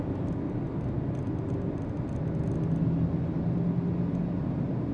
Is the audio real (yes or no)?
yes